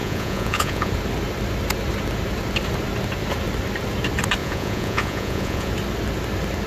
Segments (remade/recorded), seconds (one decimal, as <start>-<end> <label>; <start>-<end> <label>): 0.0-0.9 remade; 0.9-4.4 recorded; 4.4-5.7 remade; 5.7-6.7 recorded